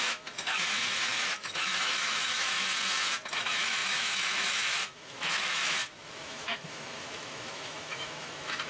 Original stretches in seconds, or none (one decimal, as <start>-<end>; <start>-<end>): 2.7-3.3